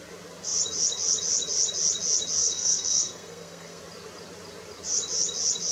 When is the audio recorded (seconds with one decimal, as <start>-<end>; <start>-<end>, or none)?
0.0-2.4; 3.8-5.7